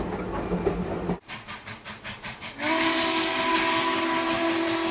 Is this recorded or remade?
recorded